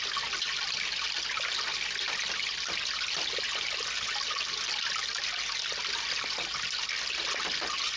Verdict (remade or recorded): recorded